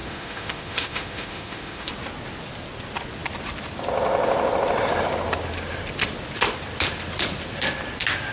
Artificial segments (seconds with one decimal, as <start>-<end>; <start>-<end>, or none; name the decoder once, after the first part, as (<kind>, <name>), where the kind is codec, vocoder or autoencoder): 0.0-1.9 (autoencoder, DAC-VAE)